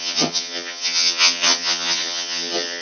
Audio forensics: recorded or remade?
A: remade